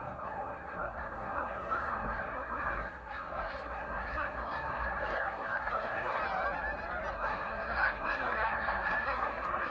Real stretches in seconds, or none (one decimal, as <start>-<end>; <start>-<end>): 6.2-7.1